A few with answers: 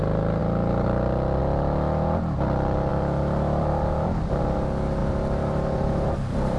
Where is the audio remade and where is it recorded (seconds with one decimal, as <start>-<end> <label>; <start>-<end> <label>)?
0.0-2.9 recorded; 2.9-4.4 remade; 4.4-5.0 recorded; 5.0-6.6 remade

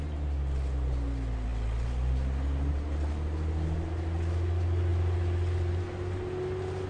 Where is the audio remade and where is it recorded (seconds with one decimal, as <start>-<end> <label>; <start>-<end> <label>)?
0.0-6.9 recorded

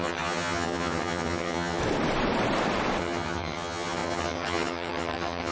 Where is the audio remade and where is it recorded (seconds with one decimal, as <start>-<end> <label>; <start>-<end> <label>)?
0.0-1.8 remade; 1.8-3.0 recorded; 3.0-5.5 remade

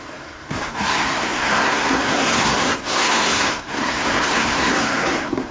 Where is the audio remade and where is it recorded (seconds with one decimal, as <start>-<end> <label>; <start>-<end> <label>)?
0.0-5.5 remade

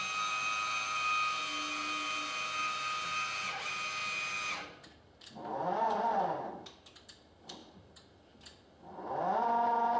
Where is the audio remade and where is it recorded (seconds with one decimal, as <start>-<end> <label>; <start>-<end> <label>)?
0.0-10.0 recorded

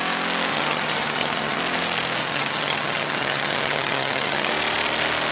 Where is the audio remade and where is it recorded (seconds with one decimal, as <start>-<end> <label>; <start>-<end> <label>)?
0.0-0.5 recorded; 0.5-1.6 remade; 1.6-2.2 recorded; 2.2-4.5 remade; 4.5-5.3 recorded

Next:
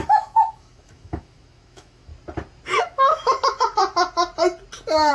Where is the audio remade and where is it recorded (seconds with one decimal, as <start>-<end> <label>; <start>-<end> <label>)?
0.0-2.1 remade; 2.1-2.8 recorded; 2.8-3.8 remade; 3.8-5.1 recorded